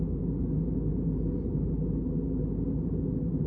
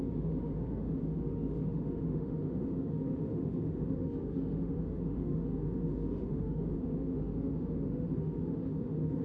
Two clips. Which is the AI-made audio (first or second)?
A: second